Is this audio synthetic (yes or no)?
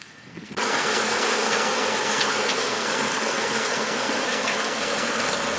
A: yes